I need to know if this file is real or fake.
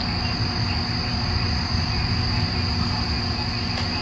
real